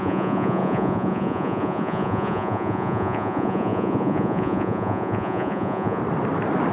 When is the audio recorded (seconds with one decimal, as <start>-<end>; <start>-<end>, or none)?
6.0-6.7